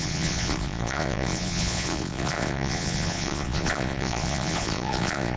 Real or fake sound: fake